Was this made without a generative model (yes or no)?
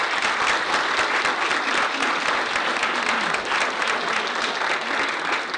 yes